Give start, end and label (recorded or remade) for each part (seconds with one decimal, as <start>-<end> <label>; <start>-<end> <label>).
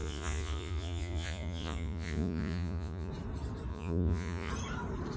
0.0-3.1 remade; 3.1-3.7 recorded; 3.7-4.5 remade; 4.5-5.2 recorded